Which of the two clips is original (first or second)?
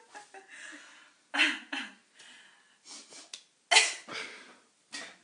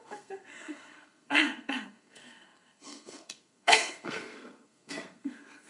first